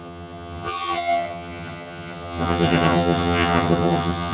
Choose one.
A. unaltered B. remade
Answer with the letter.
B